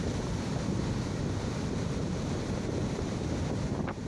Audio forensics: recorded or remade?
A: recorded